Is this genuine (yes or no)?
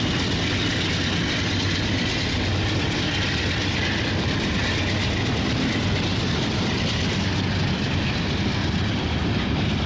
yes